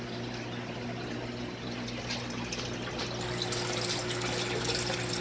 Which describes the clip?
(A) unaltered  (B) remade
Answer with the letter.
A